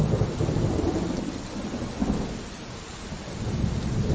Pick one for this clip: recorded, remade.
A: recorded